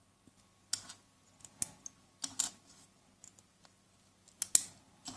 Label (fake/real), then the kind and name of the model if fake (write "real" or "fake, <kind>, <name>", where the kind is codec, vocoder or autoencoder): real